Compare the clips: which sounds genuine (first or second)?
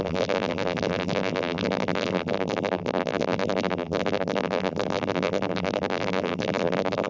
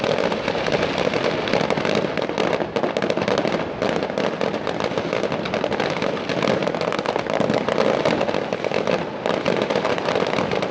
second